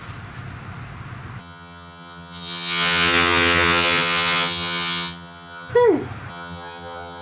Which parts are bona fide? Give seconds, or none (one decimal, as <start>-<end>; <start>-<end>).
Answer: 0.0-1.4; 5.7-6.3